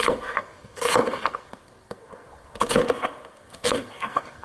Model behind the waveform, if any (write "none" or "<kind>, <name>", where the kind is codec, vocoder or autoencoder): codec, SNAC